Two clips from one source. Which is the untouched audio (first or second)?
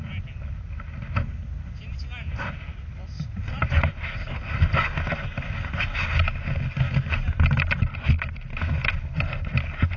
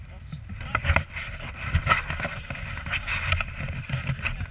first